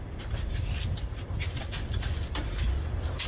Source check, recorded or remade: recorded